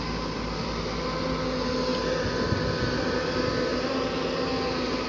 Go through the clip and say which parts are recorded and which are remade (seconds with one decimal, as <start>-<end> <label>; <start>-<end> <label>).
0.0-5.1 recorded

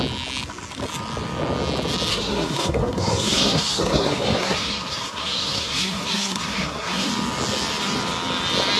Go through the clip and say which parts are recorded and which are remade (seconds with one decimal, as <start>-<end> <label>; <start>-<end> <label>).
0.0-2.1 recorded; 2.1-7.1 remade; 7.1-8.8 recorded

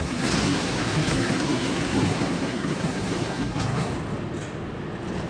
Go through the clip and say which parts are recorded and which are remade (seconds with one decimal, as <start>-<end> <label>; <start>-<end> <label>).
0.0-3.9 remade; 3.9-5.3 recorded

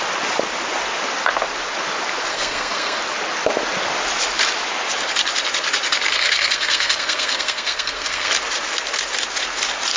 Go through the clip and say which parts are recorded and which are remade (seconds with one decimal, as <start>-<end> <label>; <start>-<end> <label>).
0.0-2.3 recorded; 2.3-3.0 remade; 3.0-6.1 recorded; 6.1-8.3 remade; 8.3-10.0 recorded

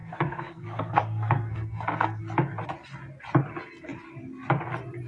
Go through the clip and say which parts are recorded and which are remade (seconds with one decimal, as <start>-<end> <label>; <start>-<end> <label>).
0.0-2.2 remade; 2.2-5.1 recorded

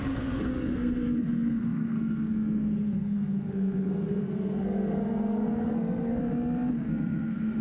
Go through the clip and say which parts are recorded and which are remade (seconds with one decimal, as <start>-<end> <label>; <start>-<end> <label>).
0.0-6.1 remade; 6.1-6.7 recorded; 6.7-7.6 remade